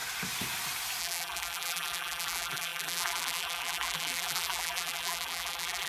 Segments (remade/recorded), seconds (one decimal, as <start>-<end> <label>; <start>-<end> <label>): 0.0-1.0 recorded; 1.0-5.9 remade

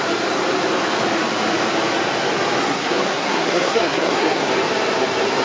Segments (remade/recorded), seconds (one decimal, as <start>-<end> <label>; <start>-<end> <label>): 0.0-2.6 recorded; 2.6-4.5 remade; 4.5-5.4 recorded

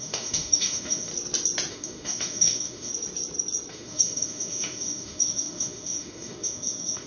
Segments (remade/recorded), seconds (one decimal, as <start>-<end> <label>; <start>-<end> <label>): 0.0-1.1 remade; 1.1-1.7 recorded; 1.7-2.9 remade; 2.9-3.7 recorded; 3.7-7.1 remade

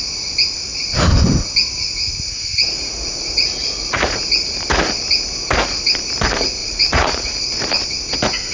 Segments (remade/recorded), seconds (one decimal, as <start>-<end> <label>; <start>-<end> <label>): 0.0-2.5 recorded; 2.5-4.2 remade; 4.2-6.6 recorded; 6.6-7.3 remade; 7.3-8.5 recorded

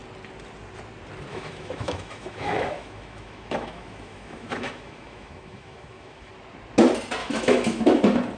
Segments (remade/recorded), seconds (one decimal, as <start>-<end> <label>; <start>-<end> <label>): 0.0-1.3 recorded; 1.3-6.3 remade; 6.3-7.2 recorded; 7.2-8.0 remade; 8.0-8.4 recorded

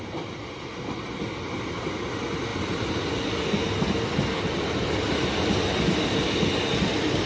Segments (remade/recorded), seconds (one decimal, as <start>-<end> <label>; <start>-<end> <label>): 0.0-7.3 recorded